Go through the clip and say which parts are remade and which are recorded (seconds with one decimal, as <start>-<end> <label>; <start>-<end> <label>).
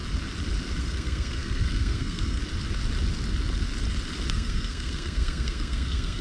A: 0.0-0.8 recorded; 0.8-2.4 remade; 2.4-4.3 recorded; 4.3-6.2 remade